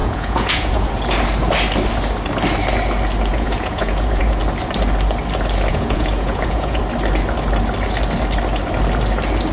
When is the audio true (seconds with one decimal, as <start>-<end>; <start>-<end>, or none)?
0.9-3.3; 4.4-5.7; 6.8-9.5